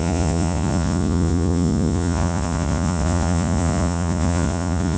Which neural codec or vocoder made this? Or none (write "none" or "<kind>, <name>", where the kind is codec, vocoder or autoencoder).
vocoder, Vocos